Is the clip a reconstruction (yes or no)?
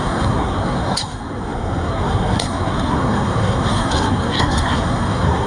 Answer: yes